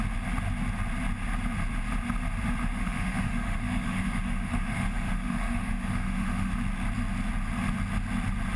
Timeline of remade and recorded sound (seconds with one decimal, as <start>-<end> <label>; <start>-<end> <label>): 0.0-2.6 recorded; 2.6-6.5 remade; 6.5-8.6 recorded